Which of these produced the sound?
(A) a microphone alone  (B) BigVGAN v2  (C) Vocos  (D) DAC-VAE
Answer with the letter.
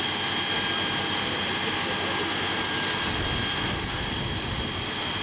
A